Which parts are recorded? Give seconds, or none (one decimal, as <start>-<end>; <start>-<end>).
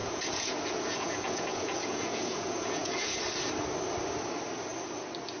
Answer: 3.2-5.4